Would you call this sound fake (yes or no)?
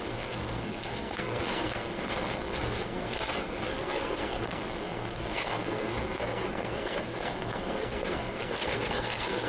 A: yes